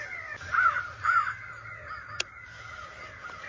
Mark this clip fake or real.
real